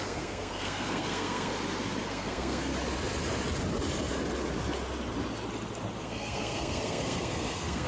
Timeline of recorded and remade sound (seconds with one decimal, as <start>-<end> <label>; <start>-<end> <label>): 0.0-1.5 remade; 1.5-2.1 recorded; 2.1-2.7 remade; 2.7-6.0 recorded; 6.0-7.9 remade